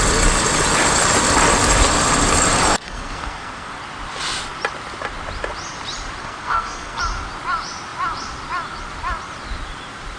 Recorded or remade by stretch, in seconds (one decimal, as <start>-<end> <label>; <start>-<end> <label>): 0.0-2.6 recorded; 2.6-3.8 remade; 3.8-6.2 recorded; 6.2-7.0 remade; 7.0-10.2 recorded